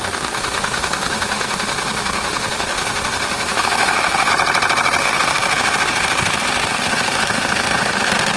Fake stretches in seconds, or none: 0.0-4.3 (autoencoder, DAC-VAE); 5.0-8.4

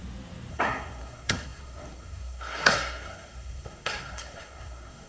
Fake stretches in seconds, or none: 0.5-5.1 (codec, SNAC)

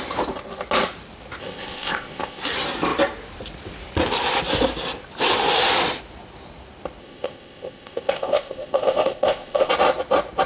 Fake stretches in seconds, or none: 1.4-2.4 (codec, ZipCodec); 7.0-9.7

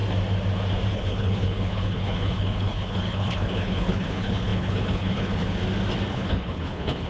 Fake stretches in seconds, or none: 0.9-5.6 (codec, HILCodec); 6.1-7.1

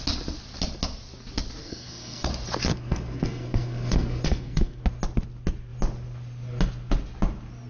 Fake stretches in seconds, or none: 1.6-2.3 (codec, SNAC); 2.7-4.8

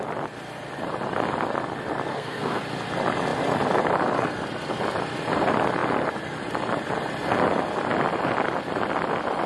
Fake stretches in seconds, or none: 2.1-2.6 (codec, SNAC)

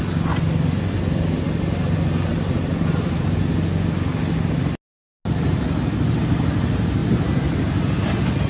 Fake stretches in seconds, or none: 2.3-3.4 (vocoder, BigVGAN v2)

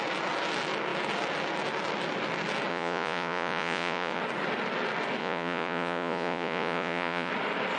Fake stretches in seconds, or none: 2.7-4.2 (vocoder, Vocos); 5.2-7.3